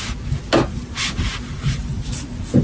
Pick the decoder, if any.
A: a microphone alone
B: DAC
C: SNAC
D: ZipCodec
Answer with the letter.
A